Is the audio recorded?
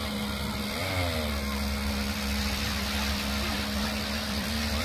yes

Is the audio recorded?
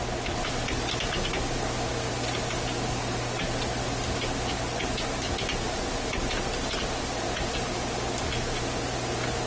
yes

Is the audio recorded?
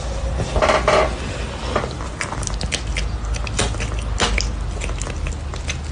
yes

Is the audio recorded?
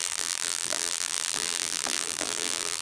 no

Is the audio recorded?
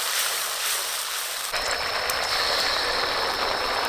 no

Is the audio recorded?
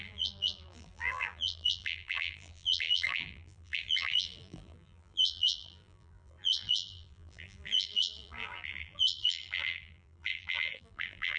no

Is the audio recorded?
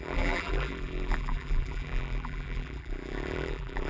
no